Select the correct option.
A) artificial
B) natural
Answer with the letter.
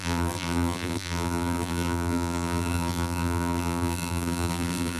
A